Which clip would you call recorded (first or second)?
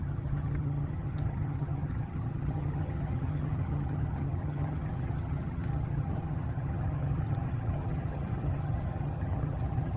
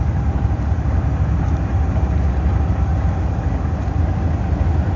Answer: second